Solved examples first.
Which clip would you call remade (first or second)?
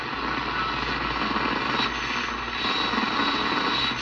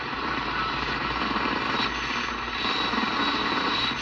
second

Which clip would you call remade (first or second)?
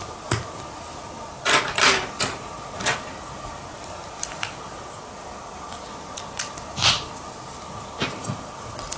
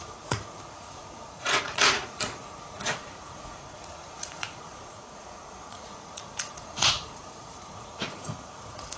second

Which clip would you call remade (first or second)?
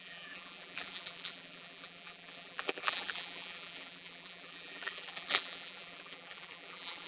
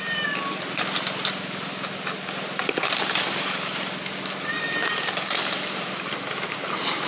first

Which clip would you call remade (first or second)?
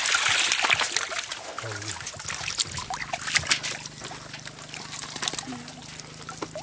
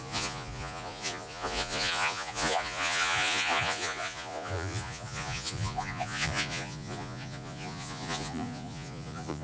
second